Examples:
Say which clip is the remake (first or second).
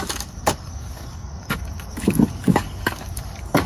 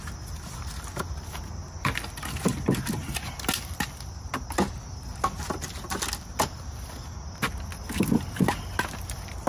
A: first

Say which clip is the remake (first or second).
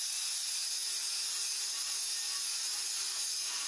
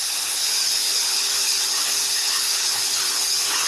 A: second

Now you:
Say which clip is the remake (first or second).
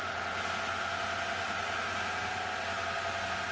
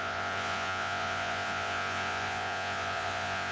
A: second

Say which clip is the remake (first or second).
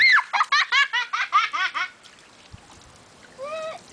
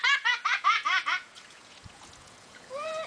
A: second